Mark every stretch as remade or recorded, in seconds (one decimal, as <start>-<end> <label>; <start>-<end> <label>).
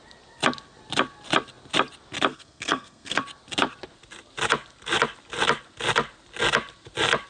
0.0-2.3 recorded; 2.3-3.2 remade; 3.2-7.3 recorded